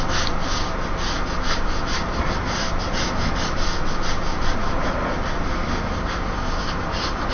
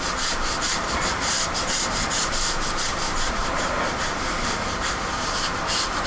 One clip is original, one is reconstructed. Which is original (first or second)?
first